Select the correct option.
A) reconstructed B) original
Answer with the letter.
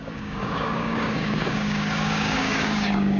A